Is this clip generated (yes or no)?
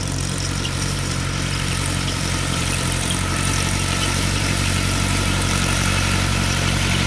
yes